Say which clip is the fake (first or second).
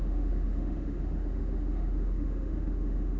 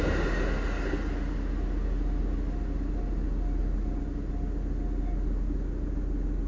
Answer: first